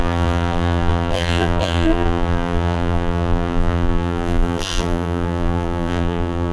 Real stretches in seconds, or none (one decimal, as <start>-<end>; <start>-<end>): none